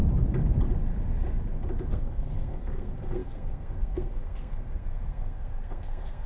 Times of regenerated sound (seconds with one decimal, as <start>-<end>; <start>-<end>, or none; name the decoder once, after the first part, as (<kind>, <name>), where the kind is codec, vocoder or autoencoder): 1.9-6.3 (codec, SNAC)